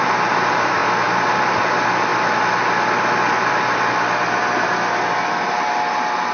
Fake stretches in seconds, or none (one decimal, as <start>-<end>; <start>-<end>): 0.0-0.8; 1.5-2.1